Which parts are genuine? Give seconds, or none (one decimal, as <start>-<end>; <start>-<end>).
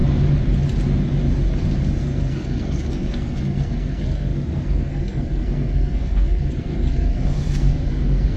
0.0-2.0